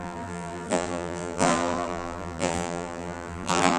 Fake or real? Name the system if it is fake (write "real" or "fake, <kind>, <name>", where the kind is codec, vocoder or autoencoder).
fake, vocoder, BigVGAN v2